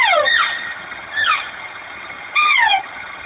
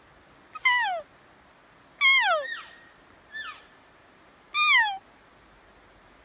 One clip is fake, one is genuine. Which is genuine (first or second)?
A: second